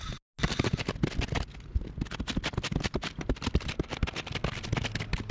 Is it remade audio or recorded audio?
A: recorded